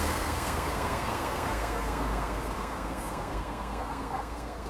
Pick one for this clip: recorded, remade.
remade